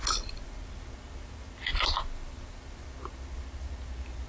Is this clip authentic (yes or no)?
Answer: yes